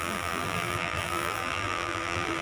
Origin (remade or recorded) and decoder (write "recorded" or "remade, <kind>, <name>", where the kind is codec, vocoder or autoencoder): remade, vocoder, BigVGAN v2